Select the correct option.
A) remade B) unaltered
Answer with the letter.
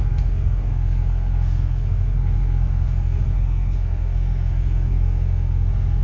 A